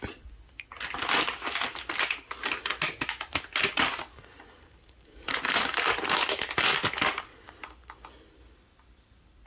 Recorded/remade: recorded